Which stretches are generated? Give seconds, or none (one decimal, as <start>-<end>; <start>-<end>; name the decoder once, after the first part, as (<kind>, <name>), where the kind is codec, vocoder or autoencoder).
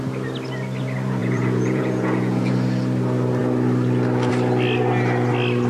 1.2-2.5 (vocoder, Vocos)